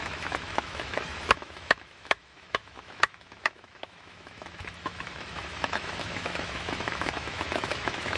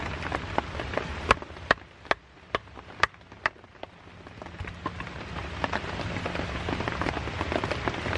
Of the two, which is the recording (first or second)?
second